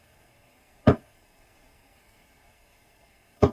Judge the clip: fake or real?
fake